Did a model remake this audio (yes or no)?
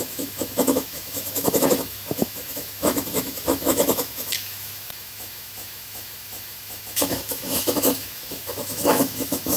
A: yes